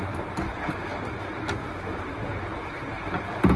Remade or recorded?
recorded